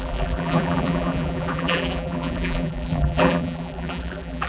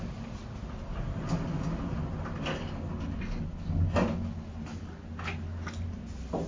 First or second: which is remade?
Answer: first